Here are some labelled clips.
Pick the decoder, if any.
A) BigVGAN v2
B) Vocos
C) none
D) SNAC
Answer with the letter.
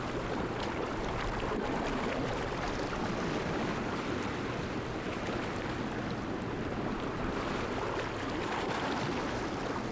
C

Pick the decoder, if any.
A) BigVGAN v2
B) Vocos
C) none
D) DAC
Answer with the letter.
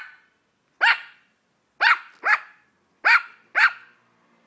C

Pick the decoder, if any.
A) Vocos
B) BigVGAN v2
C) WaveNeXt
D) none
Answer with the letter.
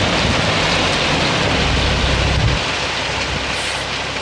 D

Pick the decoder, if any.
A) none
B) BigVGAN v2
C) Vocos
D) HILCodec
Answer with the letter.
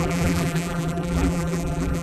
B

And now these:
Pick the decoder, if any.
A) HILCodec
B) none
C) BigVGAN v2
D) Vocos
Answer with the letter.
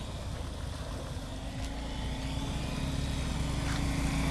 B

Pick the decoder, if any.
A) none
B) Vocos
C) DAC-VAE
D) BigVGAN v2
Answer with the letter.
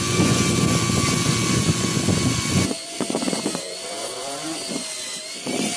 B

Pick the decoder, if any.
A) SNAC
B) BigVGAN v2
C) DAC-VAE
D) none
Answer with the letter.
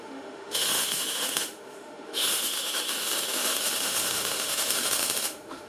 C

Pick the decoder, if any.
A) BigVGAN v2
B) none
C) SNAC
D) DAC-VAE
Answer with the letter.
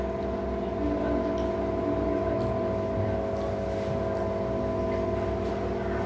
B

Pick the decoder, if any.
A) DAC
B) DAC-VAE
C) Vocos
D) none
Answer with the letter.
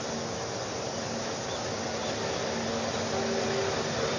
D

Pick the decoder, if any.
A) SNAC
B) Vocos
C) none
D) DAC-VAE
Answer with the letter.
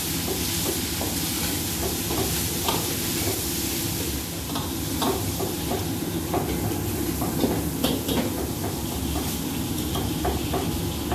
C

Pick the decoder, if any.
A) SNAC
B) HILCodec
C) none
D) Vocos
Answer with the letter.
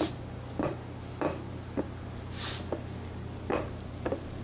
C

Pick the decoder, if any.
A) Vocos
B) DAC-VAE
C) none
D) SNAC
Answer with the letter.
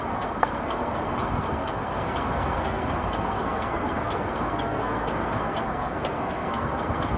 D